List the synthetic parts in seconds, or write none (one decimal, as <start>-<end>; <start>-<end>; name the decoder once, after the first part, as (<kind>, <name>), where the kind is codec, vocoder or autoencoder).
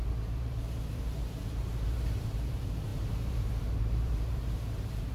0.0-5.1 (vocoder, BigVGAN v2)